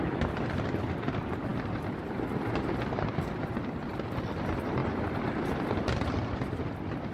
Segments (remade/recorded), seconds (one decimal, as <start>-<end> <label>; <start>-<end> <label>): 0.0-7.1 recorded